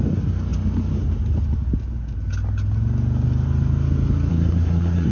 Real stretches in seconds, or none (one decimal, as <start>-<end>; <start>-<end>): 0.0-4.3